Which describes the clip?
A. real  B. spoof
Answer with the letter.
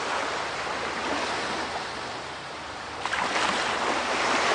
B